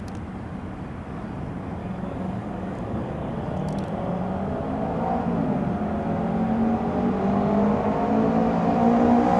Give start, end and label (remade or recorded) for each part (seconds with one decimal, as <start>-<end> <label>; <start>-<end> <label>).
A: 0.0-1.8 recorded; 1.8-3.3 remade; 3.3-9.4 recorded